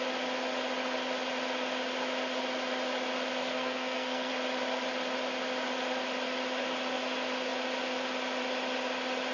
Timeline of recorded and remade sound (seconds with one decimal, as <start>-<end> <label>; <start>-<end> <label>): 0.0-3.4 recorded; 3.4-4.3 remade; 4.3-9.3 recorded